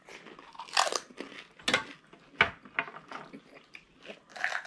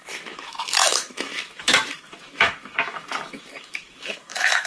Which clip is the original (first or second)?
first